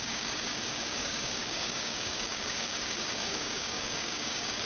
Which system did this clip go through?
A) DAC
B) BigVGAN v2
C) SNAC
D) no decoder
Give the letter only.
A